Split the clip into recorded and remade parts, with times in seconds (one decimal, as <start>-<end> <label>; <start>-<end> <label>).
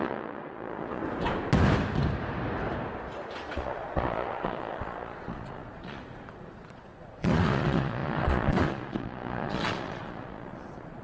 0.0-1.0 remade; 1.0-3.5 recorded; 3.5-11.0 remade